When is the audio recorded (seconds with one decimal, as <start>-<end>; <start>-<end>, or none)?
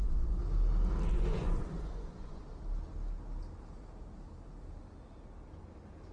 0.4-1.1; 2.4-6.1